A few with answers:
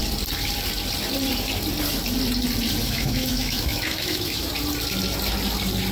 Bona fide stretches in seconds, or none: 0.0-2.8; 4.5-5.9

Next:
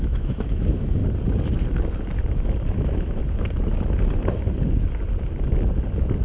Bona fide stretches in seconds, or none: 1.0-2.7; 3.2-6.2

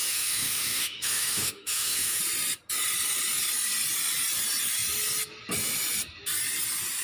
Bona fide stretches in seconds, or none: 2.2-7.0

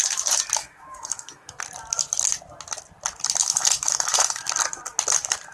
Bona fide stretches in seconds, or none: 0.0-0.6; 1.6-3.4; 4.5-5.5